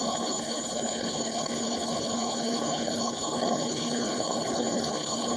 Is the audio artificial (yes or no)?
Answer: yes